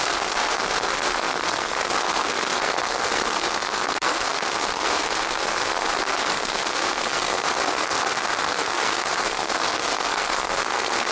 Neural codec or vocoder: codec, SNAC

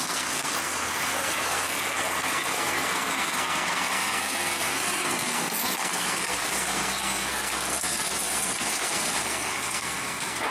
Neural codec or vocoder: codec, SNAC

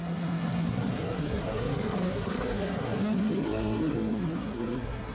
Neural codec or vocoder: codec, SNAC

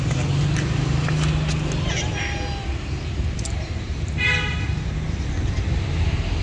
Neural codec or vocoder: none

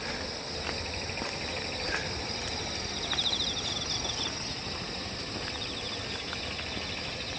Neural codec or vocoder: none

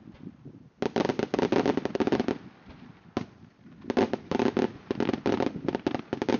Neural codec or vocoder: none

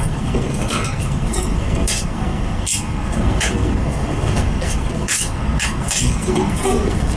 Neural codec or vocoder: codec, SNAC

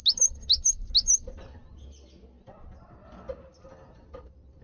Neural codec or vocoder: none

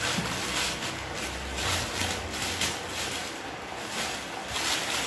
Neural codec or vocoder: none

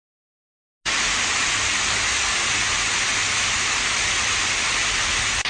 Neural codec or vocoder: none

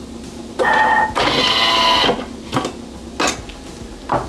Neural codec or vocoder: none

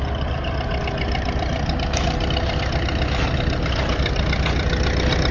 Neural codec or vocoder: none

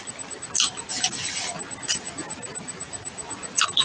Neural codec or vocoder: none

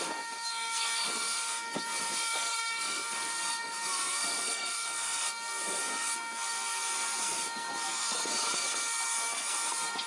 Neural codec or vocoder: codec, SNAC